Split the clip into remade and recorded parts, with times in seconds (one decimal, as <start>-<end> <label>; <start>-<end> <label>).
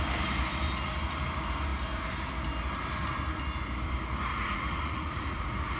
0.0-4.3 recorded; 4.3-5.8 remade